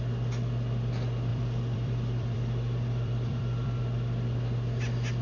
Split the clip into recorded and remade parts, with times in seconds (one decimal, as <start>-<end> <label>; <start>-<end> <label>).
0.0-1.3 recorded; 1.3-3.8 remade; 3.8-5.2 recorded